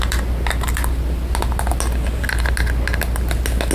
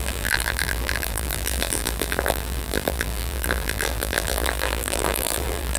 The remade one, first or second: second